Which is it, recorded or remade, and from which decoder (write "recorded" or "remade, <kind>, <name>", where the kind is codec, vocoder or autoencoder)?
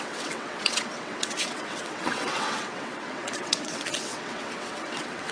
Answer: remade, vocoder, WaveNeXt